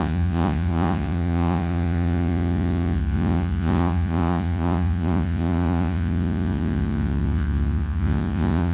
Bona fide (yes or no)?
no